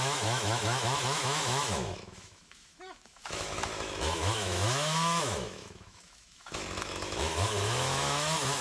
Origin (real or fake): fake